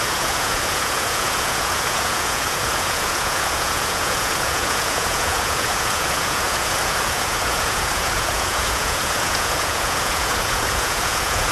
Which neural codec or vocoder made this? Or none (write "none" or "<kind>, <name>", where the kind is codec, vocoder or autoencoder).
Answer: vocoder, Vocos